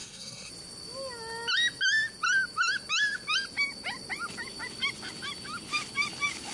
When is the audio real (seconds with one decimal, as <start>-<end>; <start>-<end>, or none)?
0.5-6.5